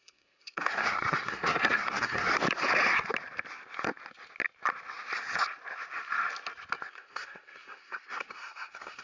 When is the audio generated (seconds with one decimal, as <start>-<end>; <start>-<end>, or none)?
0.0-2.3; 6.9-9.0